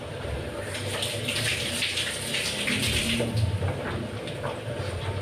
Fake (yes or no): yes